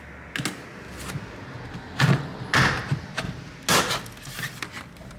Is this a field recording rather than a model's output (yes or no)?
yes